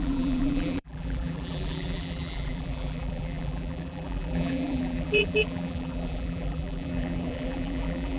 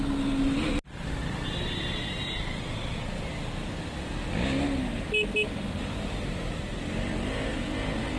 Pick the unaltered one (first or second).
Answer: second